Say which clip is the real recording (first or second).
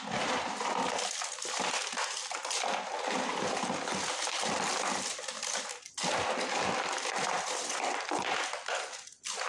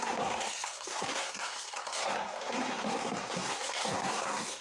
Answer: first